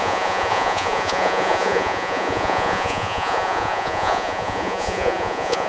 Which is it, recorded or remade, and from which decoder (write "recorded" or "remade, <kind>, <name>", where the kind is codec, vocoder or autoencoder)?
remade, vocoder, Vocos